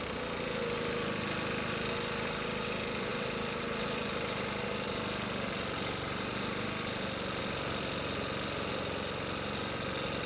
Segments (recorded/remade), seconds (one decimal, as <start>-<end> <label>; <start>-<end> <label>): 0.0-10.3 recorded